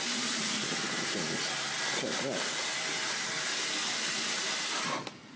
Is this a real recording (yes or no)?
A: yes